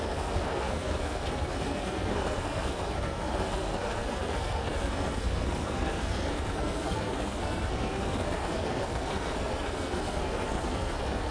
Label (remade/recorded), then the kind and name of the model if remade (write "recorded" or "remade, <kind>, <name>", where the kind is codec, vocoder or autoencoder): remade, codec, SNAC